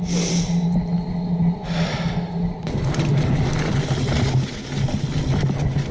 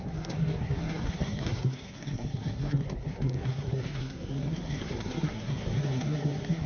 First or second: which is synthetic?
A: second